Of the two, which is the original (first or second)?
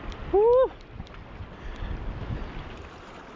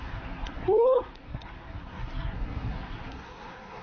first